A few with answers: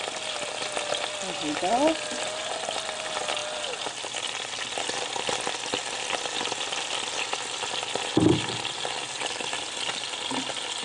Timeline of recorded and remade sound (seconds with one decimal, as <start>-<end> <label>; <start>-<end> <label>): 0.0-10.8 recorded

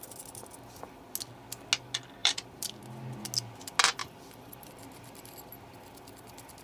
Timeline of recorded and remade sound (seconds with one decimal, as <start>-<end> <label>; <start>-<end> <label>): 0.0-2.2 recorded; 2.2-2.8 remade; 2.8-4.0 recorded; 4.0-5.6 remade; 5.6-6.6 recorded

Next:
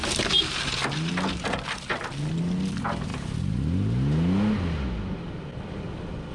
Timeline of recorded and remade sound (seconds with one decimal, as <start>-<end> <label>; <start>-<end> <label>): 0.0-6.3 recorded